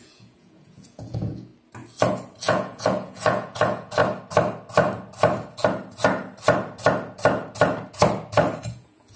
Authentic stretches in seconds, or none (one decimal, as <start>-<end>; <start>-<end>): 1.5-2.4; 4.0-8.6